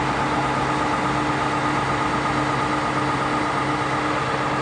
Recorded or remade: recorded